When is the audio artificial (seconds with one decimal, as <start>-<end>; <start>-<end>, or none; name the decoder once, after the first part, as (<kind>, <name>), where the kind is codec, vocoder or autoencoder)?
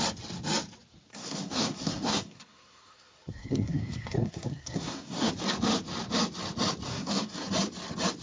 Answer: 1.1-5.3 (codec, SNAC); 6.9-7.5